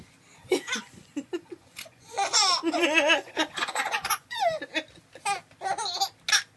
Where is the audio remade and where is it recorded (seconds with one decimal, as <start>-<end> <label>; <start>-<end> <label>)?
0.0-0.4 recorded; 0.4-4.4 remade; 4.4-6.6 recorded